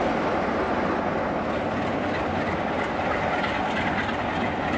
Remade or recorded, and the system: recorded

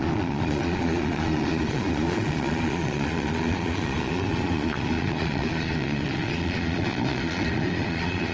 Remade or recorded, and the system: remade, vocoder, Vocos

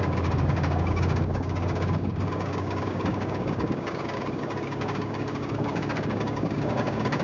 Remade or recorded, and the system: remade, codec, DAC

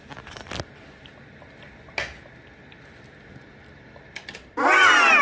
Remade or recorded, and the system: recorded